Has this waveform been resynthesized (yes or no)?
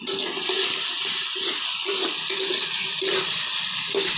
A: yes